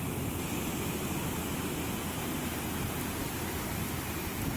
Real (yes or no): yes